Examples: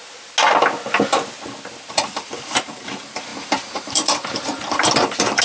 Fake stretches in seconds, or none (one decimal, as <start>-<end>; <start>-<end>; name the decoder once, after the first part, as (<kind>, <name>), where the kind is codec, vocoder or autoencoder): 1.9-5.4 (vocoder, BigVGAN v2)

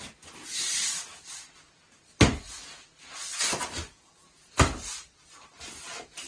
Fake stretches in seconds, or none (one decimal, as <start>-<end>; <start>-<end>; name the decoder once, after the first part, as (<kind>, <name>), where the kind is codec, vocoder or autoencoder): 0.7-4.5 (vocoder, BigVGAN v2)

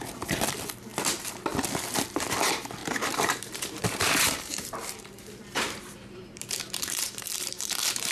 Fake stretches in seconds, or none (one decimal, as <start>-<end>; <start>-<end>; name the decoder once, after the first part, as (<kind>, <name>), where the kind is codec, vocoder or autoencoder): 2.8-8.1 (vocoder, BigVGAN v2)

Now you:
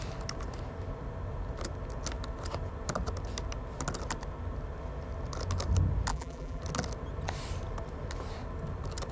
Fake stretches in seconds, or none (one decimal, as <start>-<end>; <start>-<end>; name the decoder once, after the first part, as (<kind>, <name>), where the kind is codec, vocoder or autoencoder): 6.1-6.6 (vocoder, BigVGAN v2)

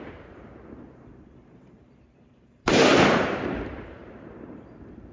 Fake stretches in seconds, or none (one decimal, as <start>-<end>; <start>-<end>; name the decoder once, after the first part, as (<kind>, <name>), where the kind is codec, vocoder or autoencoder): 0.0-5.1 (vocoder, BigVGAN v2)

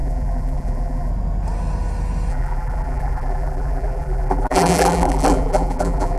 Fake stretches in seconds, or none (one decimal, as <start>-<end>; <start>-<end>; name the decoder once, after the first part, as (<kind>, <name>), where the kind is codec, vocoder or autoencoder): 0.0-1.1 (vocoder, BigVGAN v2); 2.3-6.2

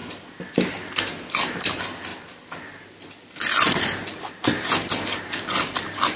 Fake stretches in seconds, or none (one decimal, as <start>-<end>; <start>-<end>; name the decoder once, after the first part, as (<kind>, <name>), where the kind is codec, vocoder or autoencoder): 0.9-2.1 (vocoder, BigVGAN v2); 3.8-6.2